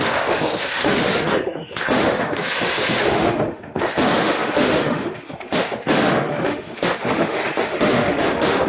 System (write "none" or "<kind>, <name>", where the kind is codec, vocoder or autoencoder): autoencoder, DAC-VAE